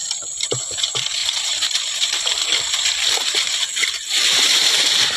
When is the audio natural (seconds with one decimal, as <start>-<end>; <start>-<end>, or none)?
0.6-1.2; 2.2-3.2; 4.4-5.2